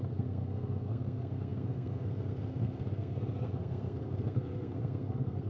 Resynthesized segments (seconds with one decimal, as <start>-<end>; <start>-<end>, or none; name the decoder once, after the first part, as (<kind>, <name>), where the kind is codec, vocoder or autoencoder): 0.0-5.5 (codec, SNAC)